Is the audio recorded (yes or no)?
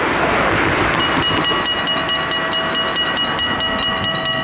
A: yes